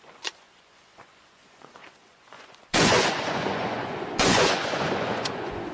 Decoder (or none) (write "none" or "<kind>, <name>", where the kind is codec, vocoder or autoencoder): vocoder, Vocos